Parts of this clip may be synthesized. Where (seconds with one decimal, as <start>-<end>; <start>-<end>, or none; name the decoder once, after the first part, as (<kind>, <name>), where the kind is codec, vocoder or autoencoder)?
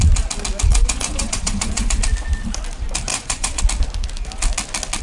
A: 0.7-2.0 (vocoder, Vocos); 3.1-3.6